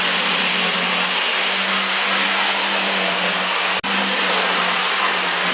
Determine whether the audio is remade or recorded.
recorded